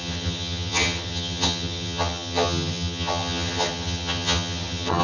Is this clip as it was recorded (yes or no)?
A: no